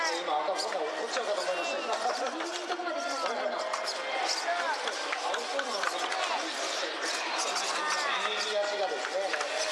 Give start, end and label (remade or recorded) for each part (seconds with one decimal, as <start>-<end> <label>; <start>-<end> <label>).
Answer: 0.0-9.7 recorded